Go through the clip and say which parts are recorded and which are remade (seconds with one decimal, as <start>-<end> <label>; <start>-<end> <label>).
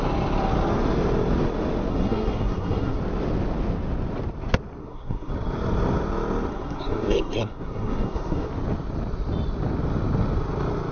0.0-1.9 recorded; 1.9-3.0 remade; 3.0-4.8 recorded; 4.8-5.3 remade; 5.3-6.5 recorded; 6.5-8.5 remade; 8.5-10.9 recorded